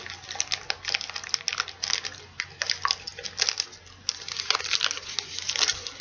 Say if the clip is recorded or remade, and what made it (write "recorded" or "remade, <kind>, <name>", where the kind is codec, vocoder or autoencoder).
recorded